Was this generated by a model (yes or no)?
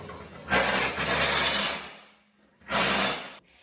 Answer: no